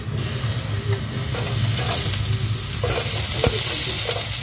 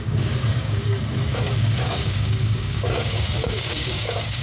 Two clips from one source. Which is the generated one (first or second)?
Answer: second